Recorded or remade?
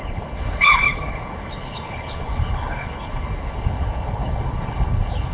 remade